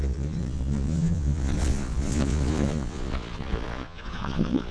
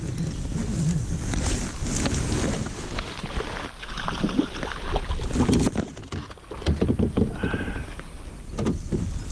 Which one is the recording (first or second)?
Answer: second